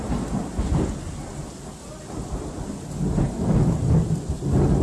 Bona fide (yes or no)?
yes